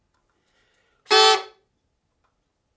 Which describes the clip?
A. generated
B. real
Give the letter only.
B